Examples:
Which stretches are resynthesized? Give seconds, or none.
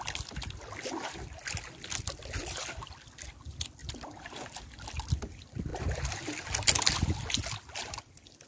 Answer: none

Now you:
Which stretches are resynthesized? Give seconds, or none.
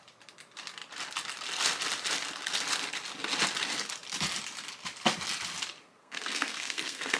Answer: 6.0-7.2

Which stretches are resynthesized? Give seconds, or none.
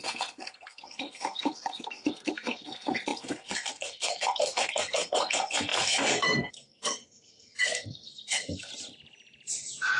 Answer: 0.0-8.7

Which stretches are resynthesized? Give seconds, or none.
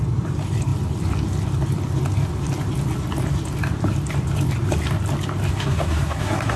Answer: 5.5-6.6